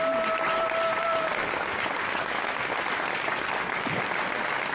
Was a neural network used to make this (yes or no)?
no